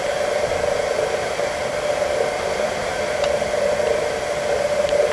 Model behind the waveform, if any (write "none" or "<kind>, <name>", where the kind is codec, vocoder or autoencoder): vocoder, BigVGAN v2